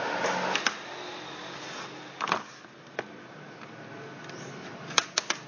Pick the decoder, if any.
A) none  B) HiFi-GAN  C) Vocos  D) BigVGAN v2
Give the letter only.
A